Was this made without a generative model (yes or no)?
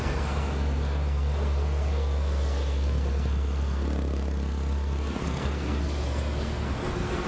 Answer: no